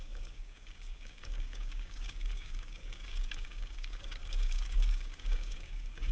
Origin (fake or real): fake